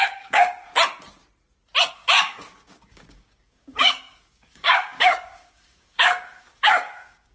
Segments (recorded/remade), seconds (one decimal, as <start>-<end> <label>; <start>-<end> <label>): 0.0-0.7 remade; 0.7-1.9 recorded; 1.9-7.3 remade

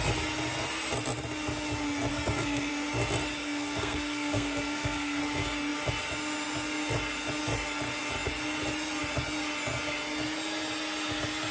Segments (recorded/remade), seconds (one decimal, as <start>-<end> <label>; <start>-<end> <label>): 0.0-2.1 recorded; 2.1-2.7 remade; 2.7-3.4 recorded; 3.4-5.2 remade; 5.2-11.5 recorded